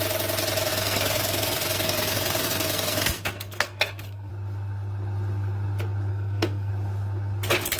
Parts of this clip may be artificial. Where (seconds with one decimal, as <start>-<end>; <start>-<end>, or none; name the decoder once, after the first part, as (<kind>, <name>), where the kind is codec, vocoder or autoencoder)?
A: 0.7-4.3 (codec, SNAC); 6.1-6.7